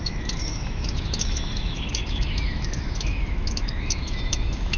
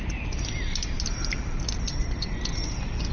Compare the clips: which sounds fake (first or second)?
first